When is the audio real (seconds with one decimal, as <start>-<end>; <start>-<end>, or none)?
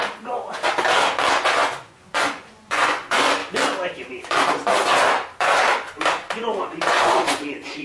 0.0-1.3; 3.4-5.4